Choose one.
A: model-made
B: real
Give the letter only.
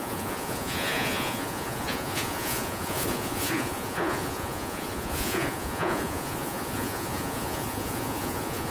A